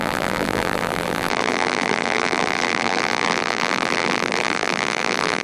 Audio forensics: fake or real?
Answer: fake